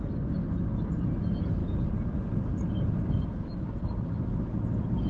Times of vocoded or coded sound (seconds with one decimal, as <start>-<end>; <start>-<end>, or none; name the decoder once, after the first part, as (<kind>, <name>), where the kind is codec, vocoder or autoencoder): 1.6-2.7 (vocoder, BigVGAN v2); 3.3-4.0